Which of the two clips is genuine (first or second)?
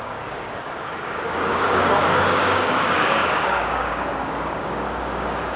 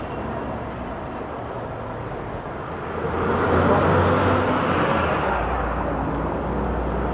second